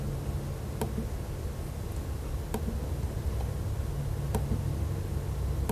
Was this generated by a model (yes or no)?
no